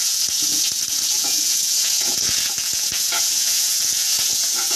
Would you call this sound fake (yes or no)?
yes